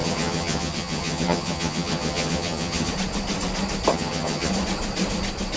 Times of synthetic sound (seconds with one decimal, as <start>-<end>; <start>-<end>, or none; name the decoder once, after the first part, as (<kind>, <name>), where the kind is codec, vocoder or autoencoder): 0.0-2.9 (vocoder, HiFi-GAN); 3.9-4.5